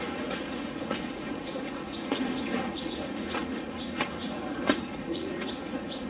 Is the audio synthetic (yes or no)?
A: yes